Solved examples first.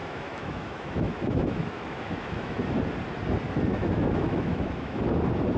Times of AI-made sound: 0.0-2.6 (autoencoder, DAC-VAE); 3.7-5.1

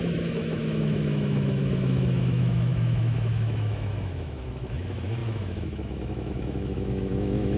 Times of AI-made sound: 0.0-7.6 (autoencoder, DAC-VAE)

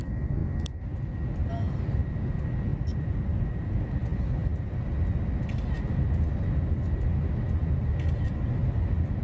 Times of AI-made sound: none

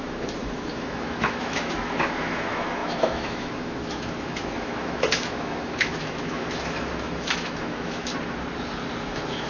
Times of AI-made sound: 0.0-8.1 (autoencoder, DAC-VAE); 9.0-9.5

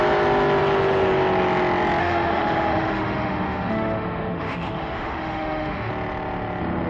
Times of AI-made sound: 2.0-5.9 (autoencoder, DAC-VAE)

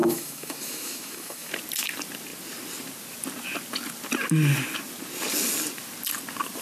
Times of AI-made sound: 0.0-1.5 (autoencoder, DAC-VAE)

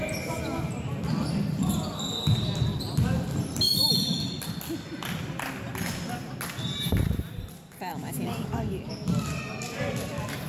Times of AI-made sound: 7.9-8.8 (autoencoder, DAC-VAE)

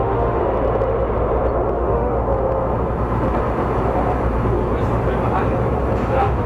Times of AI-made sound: 0.0-0.4 (autoencoder, DAC-VAE); 1.7-2.2; 6.1-6.5